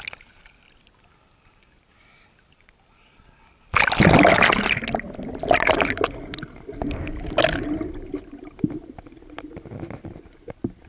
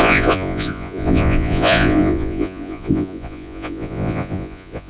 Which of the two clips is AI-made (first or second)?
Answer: second